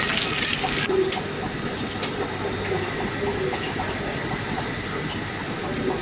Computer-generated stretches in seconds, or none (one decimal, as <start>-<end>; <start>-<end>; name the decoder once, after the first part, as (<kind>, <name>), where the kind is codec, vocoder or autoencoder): none